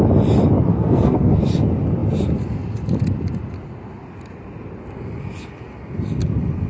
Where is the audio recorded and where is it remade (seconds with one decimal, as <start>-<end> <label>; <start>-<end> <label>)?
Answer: 0.0-0.7 recorded; 0.7-1.4 remade; 1.4-6.7 recorded